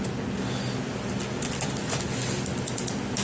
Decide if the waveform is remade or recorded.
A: recorded